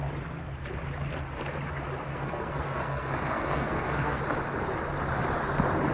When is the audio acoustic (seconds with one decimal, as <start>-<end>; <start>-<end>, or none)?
0.0-2.1; 4.2-5.9